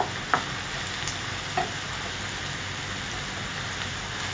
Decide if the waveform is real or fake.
real